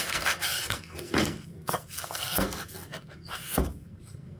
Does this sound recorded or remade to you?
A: remade